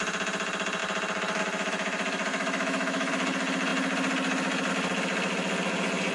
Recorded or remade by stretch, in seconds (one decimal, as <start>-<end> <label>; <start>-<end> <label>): 0.0-2.3 recorded; 2.3-3.1 remade; 3.1-6.1 recorded